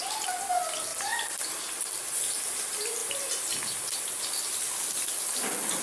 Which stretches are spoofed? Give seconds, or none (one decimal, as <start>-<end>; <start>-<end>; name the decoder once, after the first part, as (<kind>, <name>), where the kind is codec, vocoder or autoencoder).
0.9-1.6 (vocoder, BigVGAN v2)